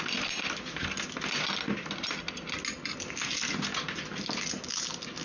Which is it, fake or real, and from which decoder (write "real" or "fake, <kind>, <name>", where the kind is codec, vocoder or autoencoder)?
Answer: real